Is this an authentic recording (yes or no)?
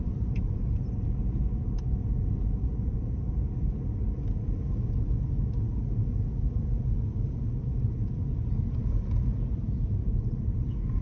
yes